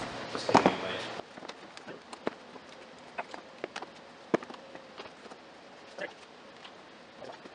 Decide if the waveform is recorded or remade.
recorded